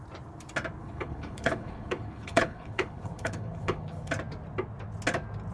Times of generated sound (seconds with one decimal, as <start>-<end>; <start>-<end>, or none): 0.8-4.1